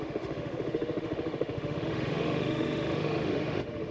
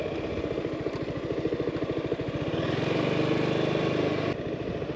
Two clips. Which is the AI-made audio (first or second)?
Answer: first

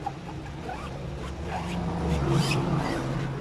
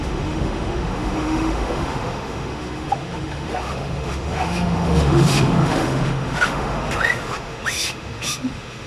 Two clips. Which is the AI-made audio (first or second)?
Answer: second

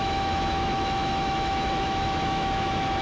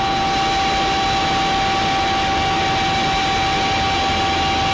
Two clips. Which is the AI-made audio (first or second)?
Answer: first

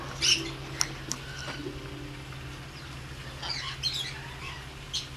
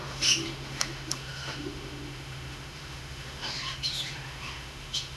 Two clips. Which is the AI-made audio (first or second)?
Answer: second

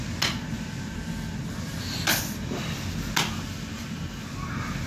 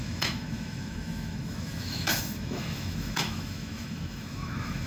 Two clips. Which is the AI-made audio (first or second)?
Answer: second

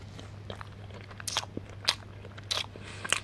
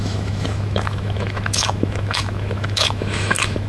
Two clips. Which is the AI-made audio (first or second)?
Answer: second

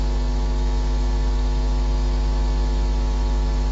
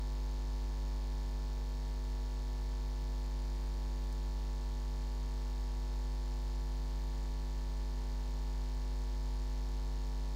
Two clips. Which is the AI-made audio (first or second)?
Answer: first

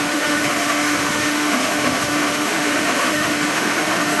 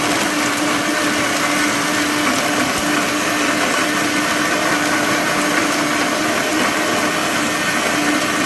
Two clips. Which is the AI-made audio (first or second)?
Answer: first